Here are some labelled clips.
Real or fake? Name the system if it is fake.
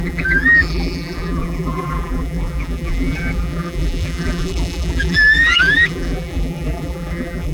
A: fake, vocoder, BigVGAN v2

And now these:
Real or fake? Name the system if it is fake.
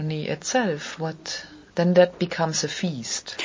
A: real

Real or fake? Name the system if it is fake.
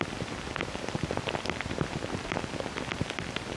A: fake, vocoder, BigVGAN v2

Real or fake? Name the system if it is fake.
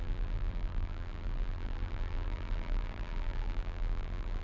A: fake, vocoder, BigVGAN v2